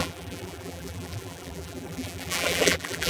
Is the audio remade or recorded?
remade